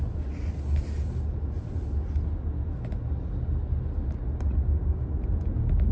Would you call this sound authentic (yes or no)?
yes